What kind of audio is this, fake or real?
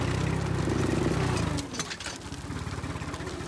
real